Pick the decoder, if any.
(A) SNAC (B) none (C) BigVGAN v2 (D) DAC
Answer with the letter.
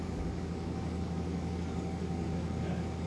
D